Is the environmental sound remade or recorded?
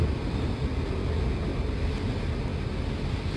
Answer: recorded